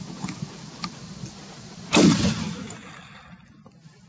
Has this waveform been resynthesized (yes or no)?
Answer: no